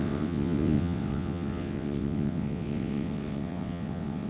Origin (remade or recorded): remade